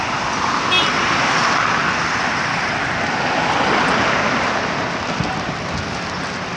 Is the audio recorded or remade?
recorded